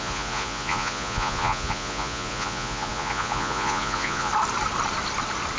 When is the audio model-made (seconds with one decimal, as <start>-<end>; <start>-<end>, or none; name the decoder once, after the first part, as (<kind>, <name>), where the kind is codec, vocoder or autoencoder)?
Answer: 0.0-4.3 (vocoder, Vocos)